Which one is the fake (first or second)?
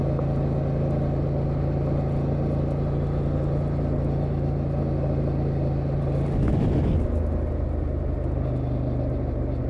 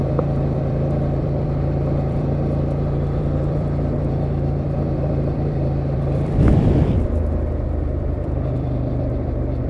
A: second